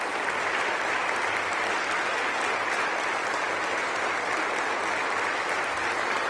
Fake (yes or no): no